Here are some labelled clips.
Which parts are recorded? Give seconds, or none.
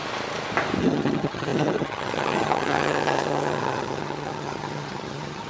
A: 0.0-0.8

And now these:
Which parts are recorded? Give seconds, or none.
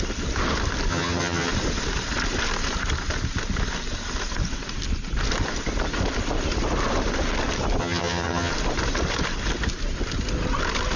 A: 0.0-0.9; 1.5-7.8; 8.5-11.0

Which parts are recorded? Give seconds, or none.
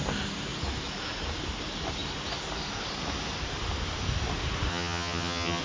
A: 0.0-4.7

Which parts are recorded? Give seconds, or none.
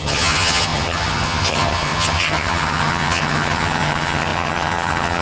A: none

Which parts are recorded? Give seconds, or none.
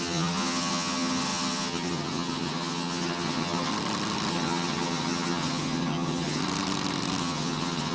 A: 3.7-4.3; 6.4-7.2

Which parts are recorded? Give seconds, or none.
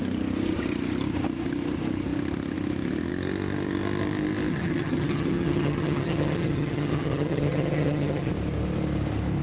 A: 0.0-4.5; 8.3-9.4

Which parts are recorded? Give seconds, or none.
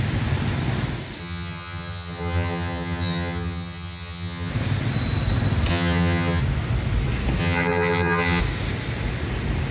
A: 0.0-1.2; 4.5-5.7; 6.4-7.4; 8.4-9.7